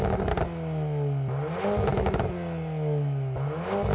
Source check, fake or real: real